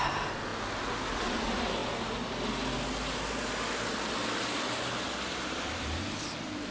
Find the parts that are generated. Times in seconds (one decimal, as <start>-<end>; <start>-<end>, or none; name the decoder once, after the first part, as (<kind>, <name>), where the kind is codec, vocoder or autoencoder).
none